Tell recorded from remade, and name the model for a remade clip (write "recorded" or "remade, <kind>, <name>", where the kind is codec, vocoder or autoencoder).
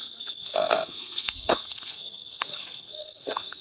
remade, codec, SNAC